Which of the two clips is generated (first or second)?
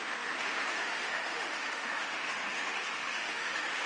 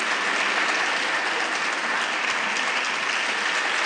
first